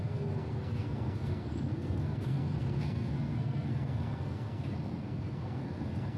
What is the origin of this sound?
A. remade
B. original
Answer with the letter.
A